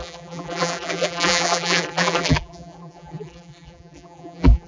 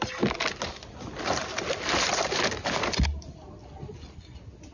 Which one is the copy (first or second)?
first